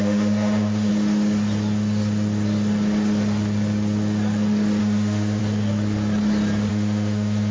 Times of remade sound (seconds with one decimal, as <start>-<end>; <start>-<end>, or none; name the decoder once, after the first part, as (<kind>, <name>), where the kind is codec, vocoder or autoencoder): 0.0-0.9 (autoencoder, DAC-VAE); 4.8-5.4; 6.7-7.5